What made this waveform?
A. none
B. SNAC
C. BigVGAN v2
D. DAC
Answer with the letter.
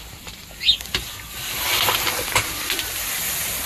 A